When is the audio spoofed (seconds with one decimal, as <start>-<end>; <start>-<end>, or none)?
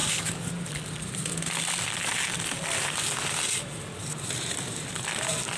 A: 0.0-0.5